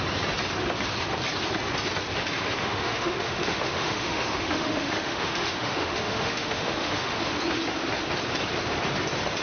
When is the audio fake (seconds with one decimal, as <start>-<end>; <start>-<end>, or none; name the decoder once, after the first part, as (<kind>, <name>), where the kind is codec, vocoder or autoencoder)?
2.6-7.2 (autoencoder, DAC-VAE)